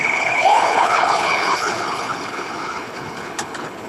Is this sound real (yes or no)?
no